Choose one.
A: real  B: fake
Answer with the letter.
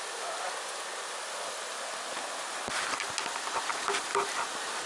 A